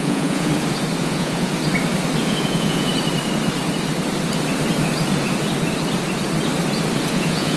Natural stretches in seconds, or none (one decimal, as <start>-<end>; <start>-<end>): 0.5-1.0; 1.5-2.2; 2.9-7.1